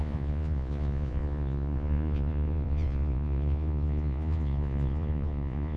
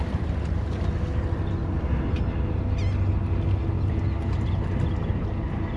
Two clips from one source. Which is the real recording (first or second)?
second